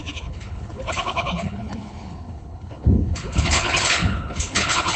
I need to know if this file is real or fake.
fake